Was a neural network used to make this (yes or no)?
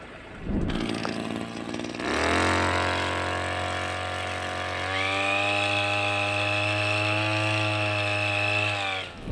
no